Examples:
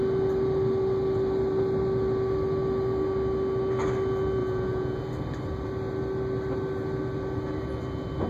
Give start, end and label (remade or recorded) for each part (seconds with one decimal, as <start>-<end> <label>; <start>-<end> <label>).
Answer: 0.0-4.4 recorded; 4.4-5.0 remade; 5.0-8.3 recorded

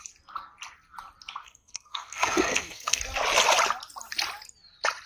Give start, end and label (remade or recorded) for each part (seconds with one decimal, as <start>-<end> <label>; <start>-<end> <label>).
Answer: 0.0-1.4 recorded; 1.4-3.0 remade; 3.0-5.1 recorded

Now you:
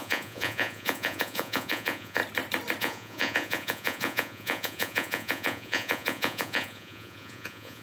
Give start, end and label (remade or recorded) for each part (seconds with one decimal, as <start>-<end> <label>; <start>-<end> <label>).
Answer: 0.0-2.2 remade; 2.2-2.8 recorded; 2.8-7.8 remade